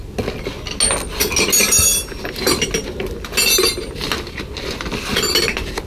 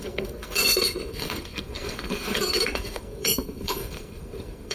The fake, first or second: second